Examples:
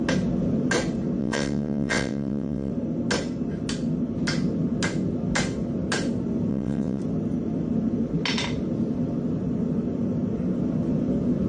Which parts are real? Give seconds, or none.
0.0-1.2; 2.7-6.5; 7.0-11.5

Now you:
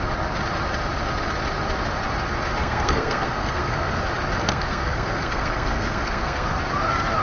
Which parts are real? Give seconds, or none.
0.0-2.6; 4.0-4.4; 6.6-7.2